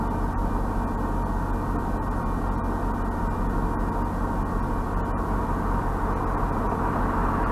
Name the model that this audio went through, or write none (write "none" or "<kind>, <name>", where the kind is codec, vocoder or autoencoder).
none